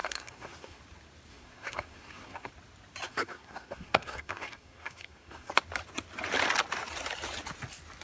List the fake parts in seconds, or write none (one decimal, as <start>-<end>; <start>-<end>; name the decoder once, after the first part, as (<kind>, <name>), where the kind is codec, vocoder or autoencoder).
0.0-0.8 (codec, SNAC); 1.3-2.5; 3.1-5.5